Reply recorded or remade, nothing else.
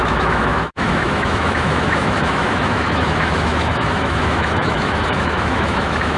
remade